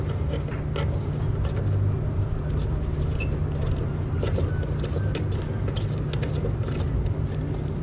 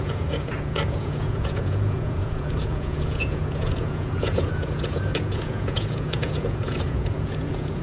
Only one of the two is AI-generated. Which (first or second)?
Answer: second